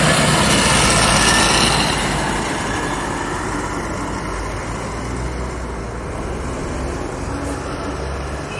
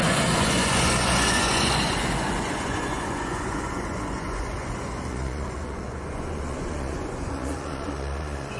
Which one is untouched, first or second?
first